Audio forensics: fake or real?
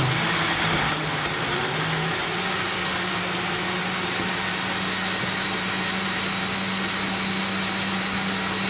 real